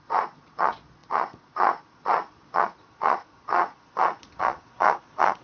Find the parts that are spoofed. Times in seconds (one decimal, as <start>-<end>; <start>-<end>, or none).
0.0-5.4